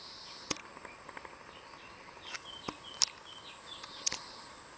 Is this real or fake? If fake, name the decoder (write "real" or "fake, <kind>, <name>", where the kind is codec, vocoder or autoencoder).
real